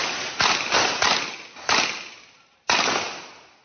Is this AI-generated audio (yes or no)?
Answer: no